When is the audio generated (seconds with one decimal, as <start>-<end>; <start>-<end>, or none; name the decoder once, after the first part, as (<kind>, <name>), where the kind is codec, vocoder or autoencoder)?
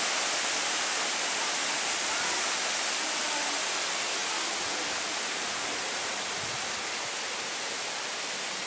none